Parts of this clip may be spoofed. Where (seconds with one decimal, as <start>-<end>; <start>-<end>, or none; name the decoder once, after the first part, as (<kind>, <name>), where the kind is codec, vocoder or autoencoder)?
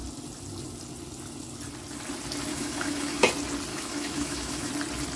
2.5-3.3 (autoencoder, DAC-VAE); 3.7-4.7